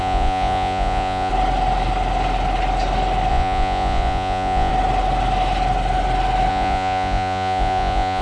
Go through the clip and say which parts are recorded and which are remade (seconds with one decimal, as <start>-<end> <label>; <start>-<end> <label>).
0.0-1.3 remade; 1.3-3.3 recorded; 3.3-4.7 remade; 4.7-6.5 recorded; 6.5-8.2 remade